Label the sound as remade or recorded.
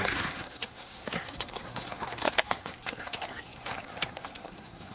remade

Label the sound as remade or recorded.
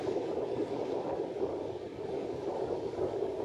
remade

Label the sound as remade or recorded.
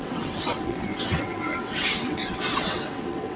remade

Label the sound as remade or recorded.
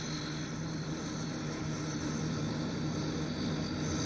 recorded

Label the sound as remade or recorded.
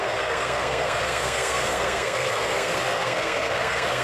remade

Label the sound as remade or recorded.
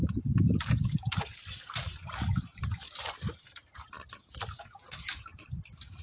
remade